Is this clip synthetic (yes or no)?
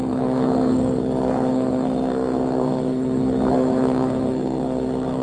yes